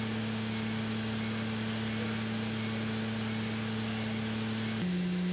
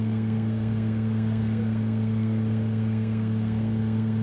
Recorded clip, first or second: first